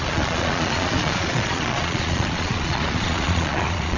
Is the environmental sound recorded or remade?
remade